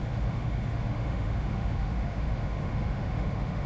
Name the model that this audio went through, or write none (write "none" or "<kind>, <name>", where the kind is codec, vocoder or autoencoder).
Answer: autoencoder, DAC-VAE